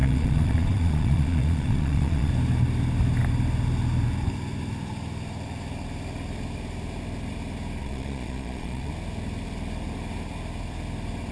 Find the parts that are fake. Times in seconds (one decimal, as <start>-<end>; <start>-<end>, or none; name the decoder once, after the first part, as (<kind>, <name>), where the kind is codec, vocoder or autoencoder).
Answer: 0.0-2.3 (vocoder, Vocos); 7.8-8.9